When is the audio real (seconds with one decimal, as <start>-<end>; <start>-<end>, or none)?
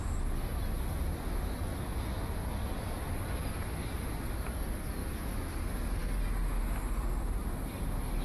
0.0-5.0; 5.6-8.2